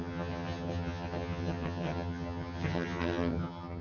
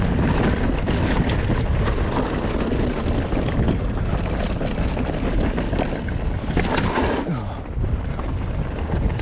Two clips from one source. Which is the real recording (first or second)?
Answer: second